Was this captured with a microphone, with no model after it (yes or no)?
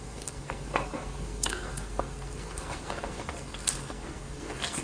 no